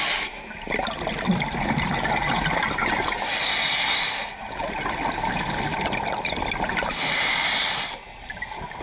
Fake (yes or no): no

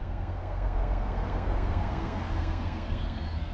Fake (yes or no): yes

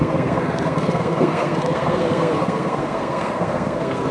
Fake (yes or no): yes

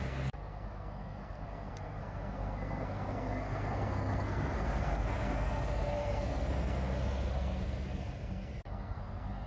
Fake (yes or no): yes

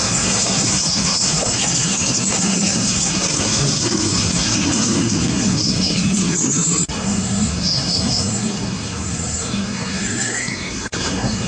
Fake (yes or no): yes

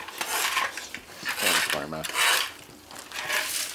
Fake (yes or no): no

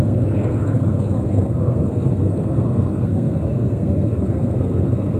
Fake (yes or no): yes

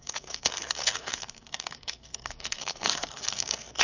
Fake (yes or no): yes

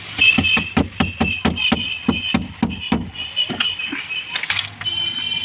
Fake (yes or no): no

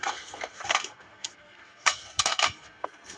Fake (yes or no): yes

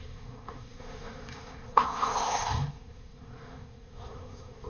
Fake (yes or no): yes